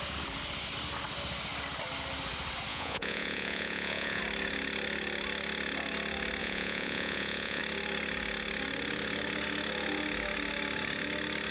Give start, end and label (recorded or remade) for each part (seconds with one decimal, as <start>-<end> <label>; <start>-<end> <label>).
0.0-2.7 recorded; 2.7-4.2 remade; 4.2-6.4 recorded; 6.4-7.6 remade; 7.6-11.5 recorded